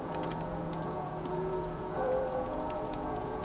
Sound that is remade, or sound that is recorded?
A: remade